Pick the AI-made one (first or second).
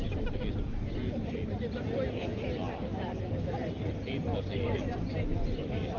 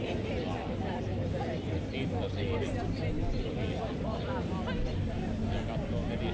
first